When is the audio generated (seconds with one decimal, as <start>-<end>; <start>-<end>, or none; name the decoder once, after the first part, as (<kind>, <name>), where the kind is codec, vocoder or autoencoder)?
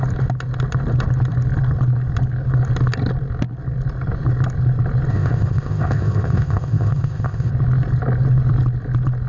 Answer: 5.1-7.5 (codec, ZipCodec)